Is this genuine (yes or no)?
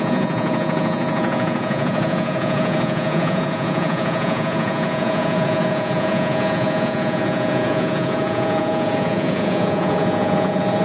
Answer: no